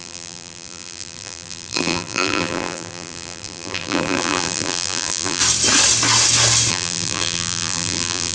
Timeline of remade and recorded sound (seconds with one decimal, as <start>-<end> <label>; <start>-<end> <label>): 0.0-5.4 remade; 5.4-6.7 recorded; 6.7-8.3 remade